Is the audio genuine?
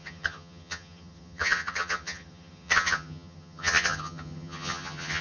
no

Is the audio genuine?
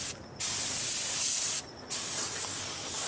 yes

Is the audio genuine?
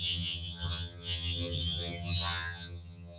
no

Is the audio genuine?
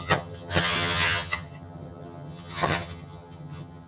no